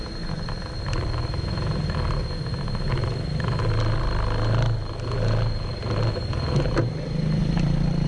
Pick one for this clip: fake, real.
real